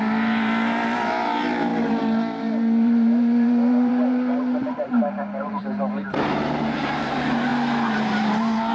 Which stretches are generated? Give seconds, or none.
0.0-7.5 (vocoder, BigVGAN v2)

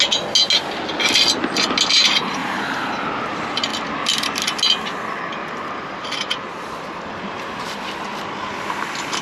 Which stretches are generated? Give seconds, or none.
2.4-2.9 (vocoder, BigVGAN v2); 5.4-6.9

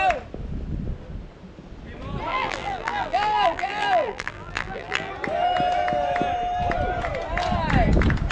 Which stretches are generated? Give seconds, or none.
2.3-5.1 (vocoder, BigVGAN v2)

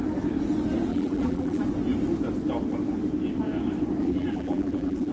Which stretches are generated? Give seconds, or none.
0.9-1.6 (vocoder, BigVGAN v2); 4.0-5.1

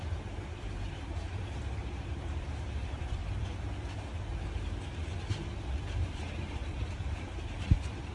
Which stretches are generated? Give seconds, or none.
0.0-3.2 (vocoder, BigVGAN v2); 6.0-8.1

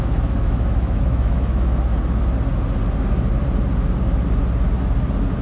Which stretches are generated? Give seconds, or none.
0.0-1.9 (autoencoder, DAC-VAE)